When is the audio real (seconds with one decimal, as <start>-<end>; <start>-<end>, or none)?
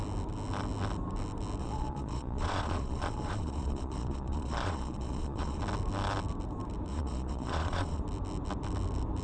0.0-1.6; 5.6-6.9; 8.0-9.2